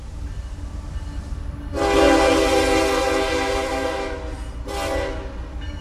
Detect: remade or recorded recorded